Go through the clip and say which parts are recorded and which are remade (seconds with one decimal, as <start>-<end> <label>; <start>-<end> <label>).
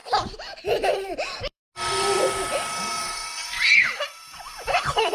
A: 0.0-0.6 recorded; 0.6-1.6 remade; 1.6-2.9 recorded; 2.9-5.1 remade